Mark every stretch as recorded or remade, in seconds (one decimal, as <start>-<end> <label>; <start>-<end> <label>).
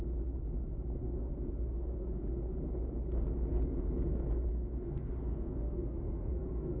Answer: 0.0-1.0 recorded; 1.0-2.2 remade; 2.2-3.5 recorded; 3.5-4.1 remade; 4.1-4.5 recorded; 4.5-6.8 remade